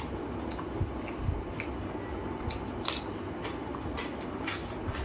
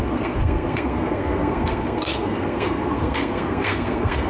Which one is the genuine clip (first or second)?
first